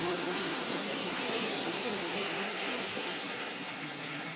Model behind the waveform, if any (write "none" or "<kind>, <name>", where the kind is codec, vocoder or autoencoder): codec, SNAC